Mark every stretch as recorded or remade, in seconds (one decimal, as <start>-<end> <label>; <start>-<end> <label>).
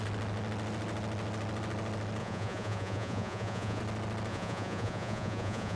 0.0-2.2 recorded; 2.2-3.8 remade; 3.8-4.3 recorded; 4.3-5.8 remade